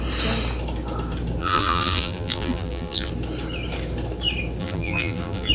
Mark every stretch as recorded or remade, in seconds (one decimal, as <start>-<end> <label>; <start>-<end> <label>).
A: 0.0-1.4 recorded; 1.4-3.1 remade; 3.1-4.6 recorded; 4.6-5.5 remade